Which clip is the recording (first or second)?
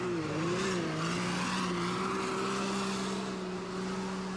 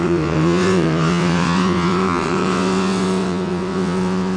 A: first